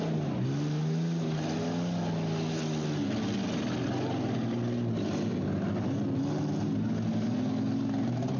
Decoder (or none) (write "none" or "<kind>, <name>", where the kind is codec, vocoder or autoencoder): none